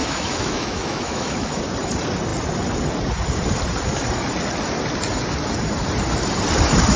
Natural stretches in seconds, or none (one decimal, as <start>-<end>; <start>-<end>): 1.6-7.0